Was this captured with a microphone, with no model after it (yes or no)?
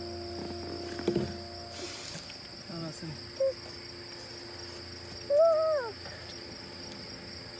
yes